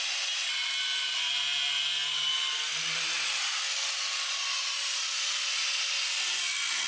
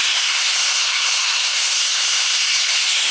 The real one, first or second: first